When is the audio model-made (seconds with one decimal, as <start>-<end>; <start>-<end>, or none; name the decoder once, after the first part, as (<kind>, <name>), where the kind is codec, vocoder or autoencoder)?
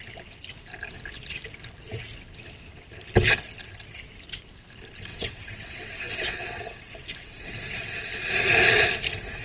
5.1-7.1 (vocoder, WaveNeXt)